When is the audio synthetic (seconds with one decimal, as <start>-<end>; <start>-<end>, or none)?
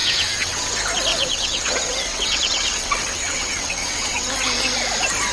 0.0-0.7; 1.1-4.3